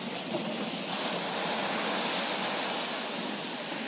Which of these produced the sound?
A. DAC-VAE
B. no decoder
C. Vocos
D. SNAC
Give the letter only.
B